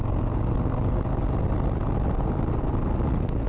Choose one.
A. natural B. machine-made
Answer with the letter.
A